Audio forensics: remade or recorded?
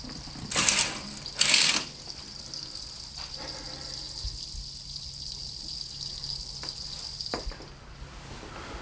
recorded